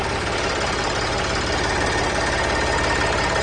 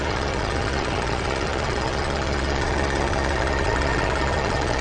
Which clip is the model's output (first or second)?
second